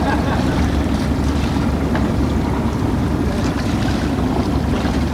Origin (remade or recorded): recorded